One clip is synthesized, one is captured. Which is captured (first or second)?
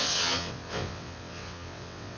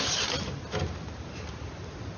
second